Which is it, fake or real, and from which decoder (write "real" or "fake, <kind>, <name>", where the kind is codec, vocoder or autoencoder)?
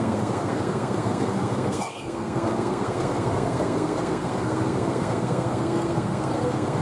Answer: fake, codec, SNAC